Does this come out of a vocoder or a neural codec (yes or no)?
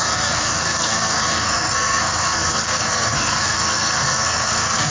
yes